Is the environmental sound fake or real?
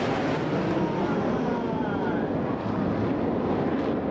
real